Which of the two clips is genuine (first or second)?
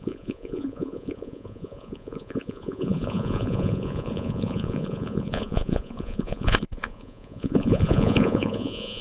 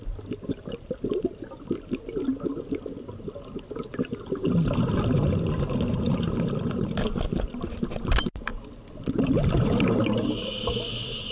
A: second